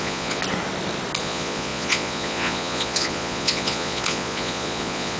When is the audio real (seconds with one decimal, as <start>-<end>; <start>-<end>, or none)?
0.4-1.2